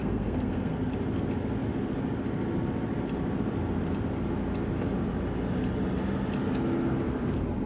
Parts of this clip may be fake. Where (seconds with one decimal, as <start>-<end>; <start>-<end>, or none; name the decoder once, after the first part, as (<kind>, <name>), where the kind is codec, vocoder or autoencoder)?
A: 0.0-0.9 (codec, SNAC)